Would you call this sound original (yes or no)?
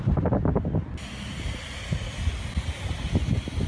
yes